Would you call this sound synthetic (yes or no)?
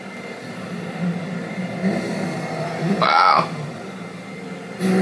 yes